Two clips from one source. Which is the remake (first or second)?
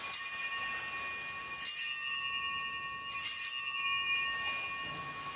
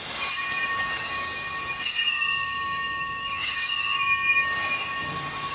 second